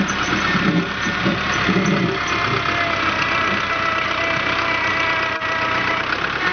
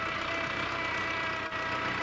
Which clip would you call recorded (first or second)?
second